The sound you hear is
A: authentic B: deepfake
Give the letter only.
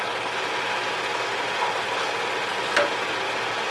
A